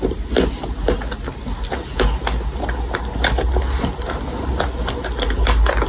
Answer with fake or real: real